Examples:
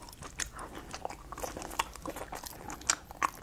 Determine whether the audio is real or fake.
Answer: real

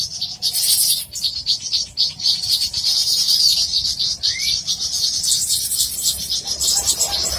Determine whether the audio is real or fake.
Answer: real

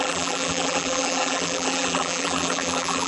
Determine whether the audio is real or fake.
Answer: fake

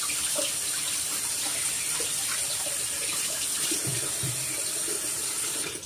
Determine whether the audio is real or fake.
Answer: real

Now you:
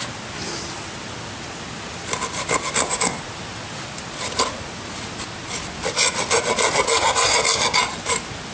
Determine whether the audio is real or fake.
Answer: real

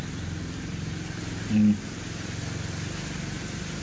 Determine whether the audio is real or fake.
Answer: real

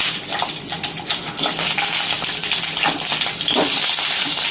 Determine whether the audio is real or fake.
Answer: real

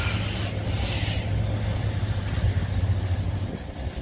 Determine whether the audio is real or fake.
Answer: real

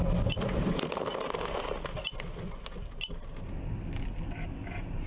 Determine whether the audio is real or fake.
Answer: real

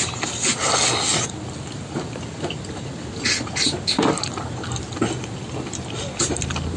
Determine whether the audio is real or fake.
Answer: real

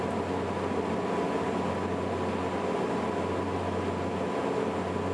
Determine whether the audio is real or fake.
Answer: real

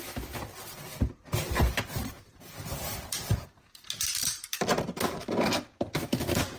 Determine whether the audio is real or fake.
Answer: fake